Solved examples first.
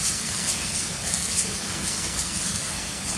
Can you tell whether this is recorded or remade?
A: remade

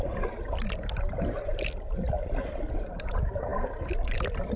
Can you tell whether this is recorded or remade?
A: recorded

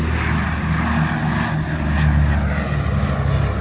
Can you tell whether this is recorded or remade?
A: recorded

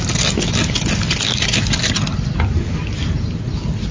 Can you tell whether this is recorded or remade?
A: recorded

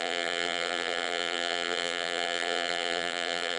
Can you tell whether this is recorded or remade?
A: remade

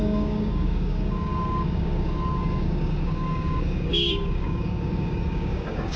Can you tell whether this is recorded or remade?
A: remade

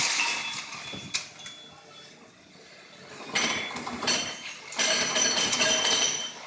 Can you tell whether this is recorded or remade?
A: recorded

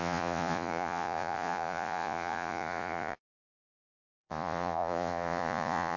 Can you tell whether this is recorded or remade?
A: remade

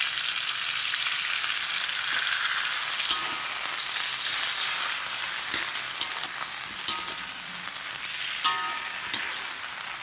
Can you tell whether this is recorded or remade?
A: recorded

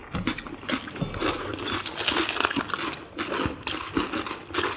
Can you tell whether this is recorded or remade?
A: recorded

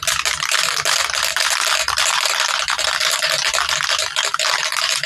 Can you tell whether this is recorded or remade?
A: recorded